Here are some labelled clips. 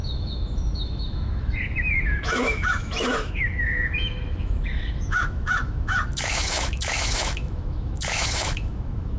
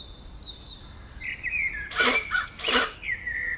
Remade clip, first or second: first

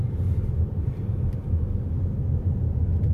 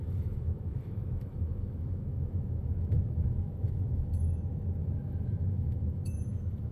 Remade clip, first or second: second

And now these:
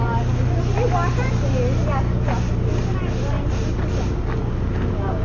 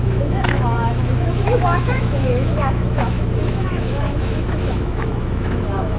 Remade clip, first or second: second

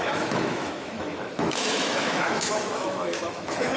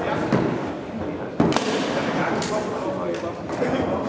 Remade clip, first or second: first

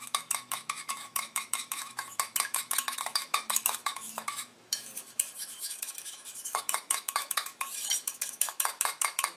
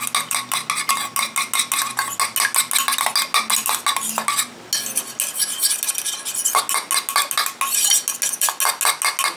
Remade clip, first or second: first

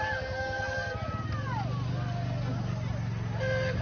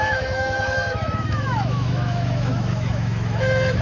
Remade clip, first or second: second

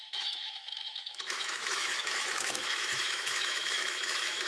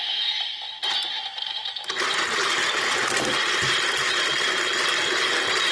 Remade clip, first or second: first